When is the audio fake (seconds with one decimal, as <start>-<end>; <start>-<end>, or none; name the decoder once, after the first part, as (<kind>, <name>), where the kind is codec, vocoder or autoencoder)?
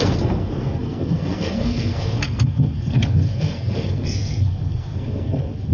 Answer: 0.0-5.7 (codec, SNAC)